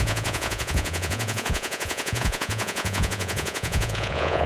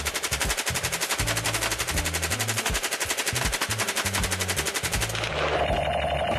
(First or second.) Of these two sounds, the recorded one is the second